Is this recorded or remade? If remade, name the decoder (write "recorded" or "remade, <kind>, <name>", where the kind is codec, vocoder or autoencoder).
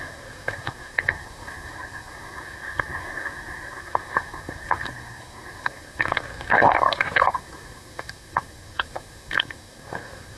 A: remade, codec, SNAC